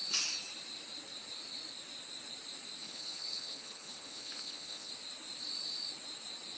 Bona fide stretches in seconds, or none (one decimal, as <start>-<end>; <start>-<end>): 0.0-2.8; 4.9-6.6